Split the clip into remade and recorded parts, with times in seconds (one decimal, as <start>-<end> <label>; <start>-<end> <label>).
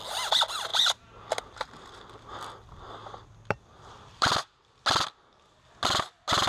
0.0-3.0 recorded; 3.0-4.6 remade; 4.6-6.5 recorded